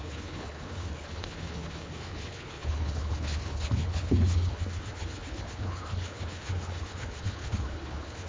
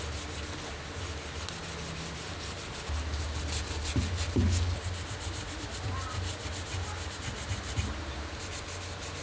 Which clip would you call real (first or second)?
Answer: second